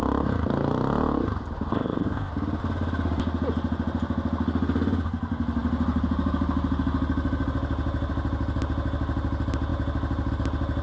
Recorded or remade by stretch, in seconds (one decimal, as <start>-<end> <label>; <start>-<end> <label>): 0.0-1.7 recorded; 1.7-2.3 remade; 2.3-10.8 recorded